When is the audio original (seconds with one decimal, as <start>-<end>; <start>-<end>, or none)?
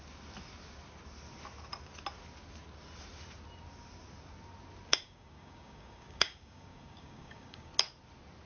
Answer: 0.0-4.9; 7.7-8.5